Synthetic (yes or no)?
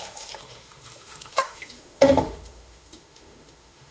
yes